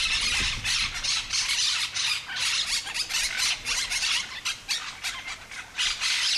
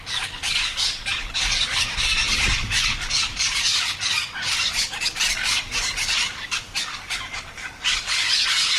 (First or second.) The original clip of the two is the first